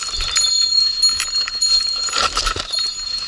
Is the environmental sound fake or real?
real